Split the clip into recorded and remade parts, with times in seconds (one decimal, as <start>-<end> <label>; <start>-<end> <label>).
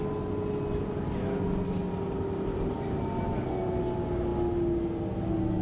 0.0-5.6 recorded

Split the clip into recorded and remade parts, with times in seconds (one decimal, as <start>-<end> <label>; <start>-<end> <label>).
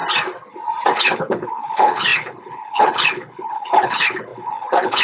0.0-0.9 recorded; 0.9-5.0 remade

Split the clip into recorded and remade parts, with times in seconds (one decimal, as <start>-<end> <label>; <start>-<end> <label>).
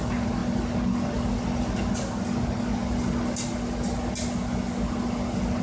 0.0-5.6 recorded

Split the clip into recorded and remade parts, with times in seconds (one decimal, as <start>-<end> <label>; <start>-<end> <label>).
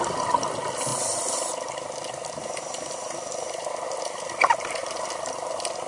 0.0-5.9 recorded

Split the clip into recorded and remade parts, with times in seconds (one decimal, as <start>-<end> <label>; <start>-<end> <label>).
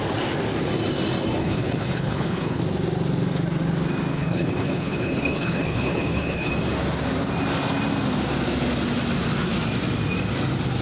0.0-1.4 recorded; 1.4-2.6 remade; 2.6-4.1 recorded; 4.1-6.5 remade; 6.5-10.8 recorded